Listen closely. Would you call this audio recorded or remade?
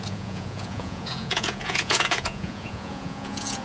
remade